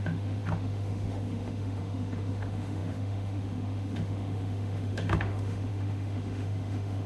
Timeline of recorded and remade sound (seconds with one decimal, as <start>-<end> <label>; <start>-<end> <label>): 0.0-7.1 remade